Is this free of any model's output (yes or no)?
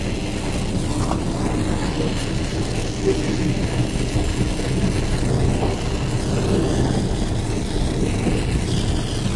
yes